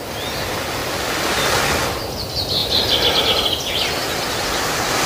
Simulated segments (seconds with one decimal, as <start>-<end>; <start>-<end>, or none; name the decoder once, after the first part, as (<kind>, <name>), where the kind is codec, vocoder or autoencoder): 0.8-1.6 (vocoder, BigVGAN v2); 2.6-3.2; 4.0-4.6